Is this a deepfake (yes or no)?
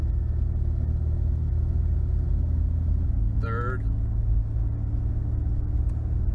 no